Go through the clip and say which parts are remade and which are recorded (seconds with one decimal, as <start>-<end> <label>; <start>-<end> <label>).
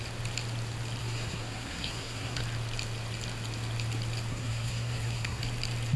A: 0.0-1.0 recorded; 1.0-2.4 remade; 2.4-4.3 recorded; 4.3-5.4 remade; 5.4-6.0 recorded